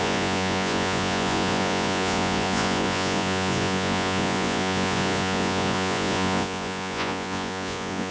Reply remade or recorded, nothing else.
remade